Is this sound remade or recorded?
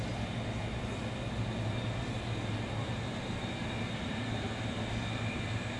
recorded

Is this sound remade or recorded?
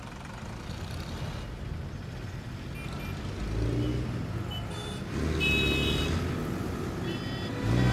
recorded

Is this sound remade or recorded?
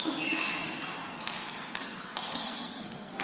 remade